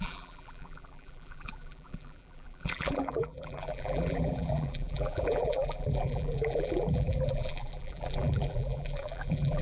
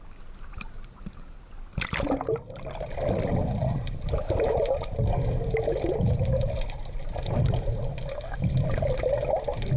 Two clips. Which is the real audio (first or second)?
second